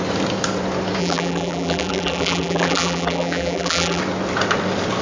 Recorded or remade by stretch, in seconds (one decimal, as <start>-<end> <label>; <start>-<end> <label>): 0.0-1.0 recorded; 1.0-4.0 remade; 4.0-5.0 recorded